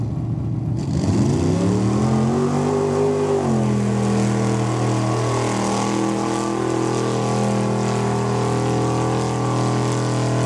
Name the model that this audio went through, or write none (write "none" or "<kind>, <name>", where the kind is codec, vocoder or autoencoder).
none